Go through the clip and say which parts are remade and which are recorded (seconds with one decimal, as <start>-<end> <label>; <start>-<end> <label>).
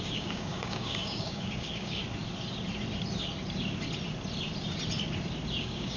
0.0-2.0 remade; 2.0-5.6 recorded; 5.6-6.0 remade